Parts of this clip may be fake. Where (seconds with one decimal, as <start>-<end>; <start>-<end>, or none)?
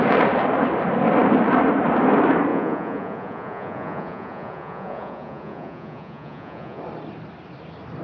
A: 2.5-6.8